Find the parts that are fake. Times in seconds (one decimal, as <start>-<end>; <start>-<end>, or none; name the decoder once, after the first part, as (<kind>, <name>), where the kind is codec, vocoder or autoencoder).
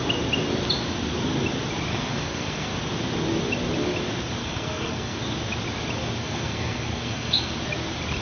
1.9-2.7 (codec, SNAC); 4.4-5.2; 6.2-7.5